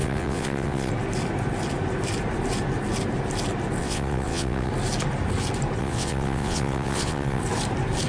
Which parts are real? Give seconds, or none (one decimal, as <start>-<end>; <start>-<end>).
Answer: 0.9-3.8; 4.7-5.8; 7.4-8.1